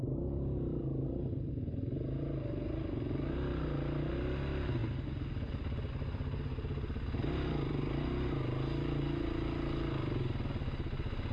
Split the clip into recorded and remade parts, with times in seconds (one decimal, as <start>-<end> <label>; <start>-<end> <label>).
0.0-11.3 recorded

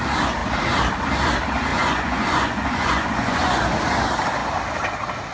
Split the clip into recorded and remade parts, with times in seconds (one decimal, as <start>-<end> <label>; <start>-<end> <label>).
0.0-1.7 recorded; 1.7-3.6 remade; 3.6-5.3 recorded

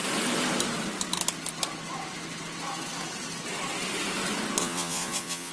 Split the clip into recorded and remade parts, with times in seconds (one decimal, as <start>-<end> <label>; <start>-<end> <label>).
0.0-4.6 recorded; 4.6-5.5 remade

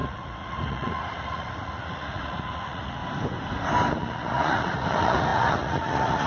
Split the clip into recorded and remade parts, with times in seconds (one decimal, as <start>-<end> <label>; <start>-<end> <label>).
0.0-3.0 remade; 3.0-3.9 recorded; 3.9-6.3 remade

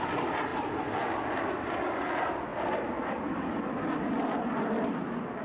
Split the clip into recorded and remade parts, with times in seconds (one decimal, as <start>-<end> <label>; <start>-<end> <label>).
0.0-5.4 recorded

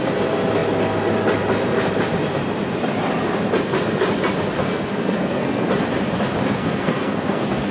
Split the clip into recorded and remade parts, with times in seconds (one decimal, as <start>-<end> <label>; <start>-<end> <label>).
0.0-4.6 recorded; 4.6-5.7 remade; 5.7-6.4 recorded; 6.4-7.7 remade

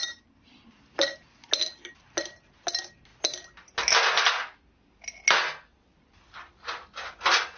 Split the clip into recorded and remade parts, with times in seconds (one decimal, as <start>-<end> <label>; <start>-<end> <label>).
0.0-7.6 recorded